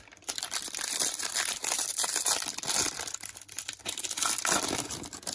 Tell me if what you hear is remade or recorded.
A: remade